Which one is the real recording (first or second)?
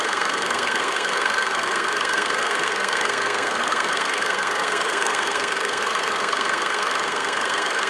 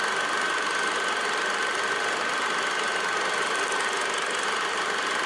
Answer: second